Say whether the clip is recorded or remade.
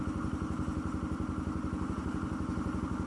recorded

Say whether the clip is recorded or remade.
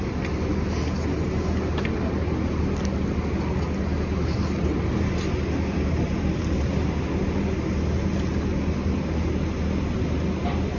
recorded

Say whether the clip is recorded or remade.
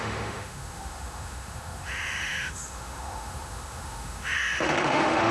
remade